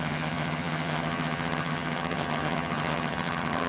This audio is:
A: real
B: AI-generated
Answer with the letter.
B